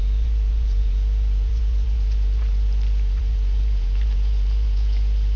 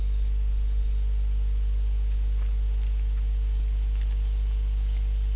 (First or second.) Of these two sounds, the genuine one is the second